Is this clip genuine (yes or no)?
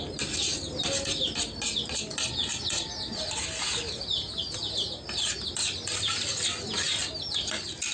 yes